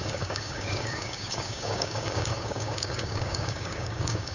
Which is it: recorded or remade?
remade